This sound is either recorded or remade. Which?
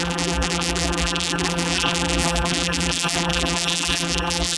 remade